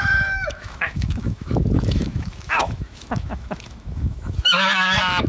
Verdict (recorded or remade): remade